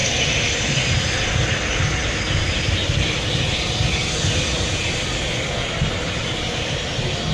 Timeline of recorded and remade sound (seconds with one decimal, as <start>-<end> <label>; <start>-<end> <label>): 0.0-7.3 recorded